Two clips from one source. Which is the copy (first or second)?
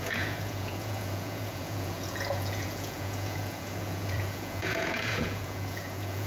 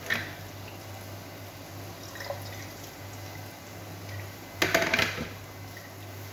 first